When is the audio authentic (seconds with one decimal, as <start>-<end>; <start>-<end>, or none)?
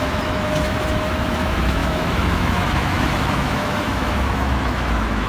none